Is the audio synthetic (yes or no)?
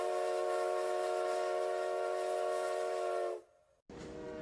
no